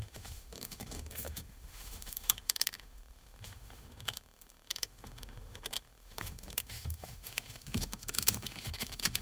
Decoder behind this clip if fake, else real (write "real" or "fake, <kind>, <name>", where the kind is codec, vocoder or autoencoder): fake, autoencoder, DAC-VAE